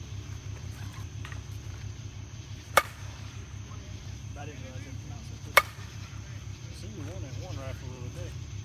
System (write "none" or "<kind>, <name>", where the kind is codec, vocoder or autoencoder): vocoder, BigVGAN v2